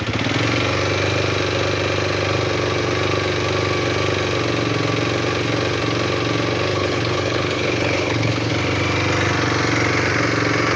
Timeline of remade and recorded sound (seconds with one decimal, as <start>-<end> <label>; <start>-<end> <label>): 0.0-6.7 recorded; 6.7-8.5 remade; 8.5-10.8 recorded